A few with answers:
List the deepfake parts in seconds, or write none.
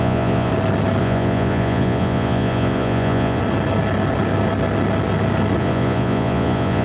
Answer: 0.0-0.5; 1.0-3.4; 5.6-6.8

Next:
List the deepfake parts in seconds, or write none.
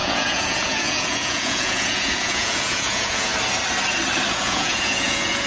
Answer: 0.0-3.3; 4.3-5.5